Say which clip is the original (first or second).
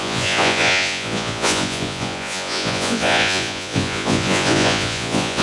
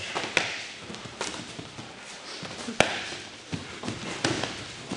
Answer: second